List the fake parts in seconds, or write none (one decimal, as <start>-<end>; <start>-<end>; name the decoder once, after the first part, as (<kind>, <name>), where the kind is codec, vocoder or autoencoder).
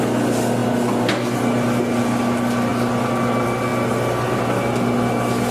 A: none